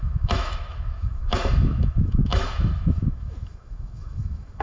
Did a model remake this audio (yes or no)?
yes